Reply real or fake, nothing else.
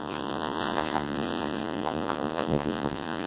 fake